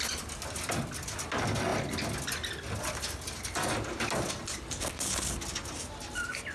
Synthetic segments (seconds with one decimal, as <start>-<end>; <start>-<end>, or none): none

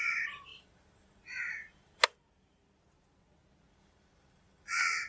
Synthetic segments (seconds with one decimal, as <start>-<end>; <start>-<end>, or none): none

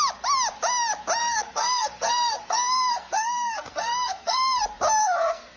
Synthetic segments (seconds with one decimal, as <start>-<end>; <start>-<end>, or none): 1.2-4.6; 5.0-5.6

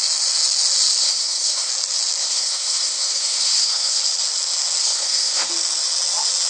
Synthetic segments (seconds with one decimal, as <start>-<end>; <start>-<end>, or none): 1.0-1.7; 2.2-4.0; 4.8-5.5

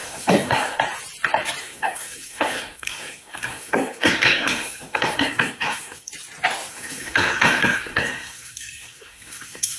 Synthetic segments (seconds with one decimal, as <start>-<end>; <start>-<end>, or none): 0.0-0.8; 1.6-6.1; 6.7-9.8